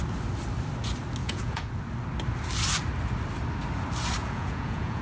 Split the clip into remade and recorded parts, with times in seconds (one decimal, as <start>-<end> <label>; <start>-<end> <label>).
0.0-1.2 recorded; 1.2-1.7 remade; 1.7-4.2 recorded; 4.2-5.0 remade